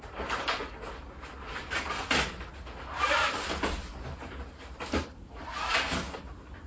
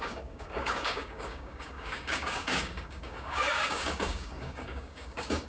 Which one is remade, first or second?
second